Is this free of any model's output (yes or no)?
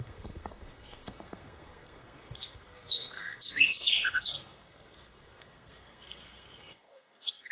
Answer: no